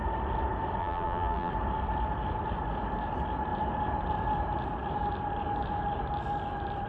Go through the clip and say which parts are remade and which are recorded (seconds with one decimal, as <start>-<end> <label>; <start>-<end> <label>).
0.0-0.8 recorded; 0.8-1.5 remade; 1.5-6.9 recorded